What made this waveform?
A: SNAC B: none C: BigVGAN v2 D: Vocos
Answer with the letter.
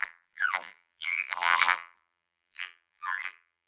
C